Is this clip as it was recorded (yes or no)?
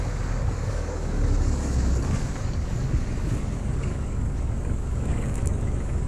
no